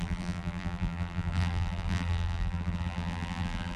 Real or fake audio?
fake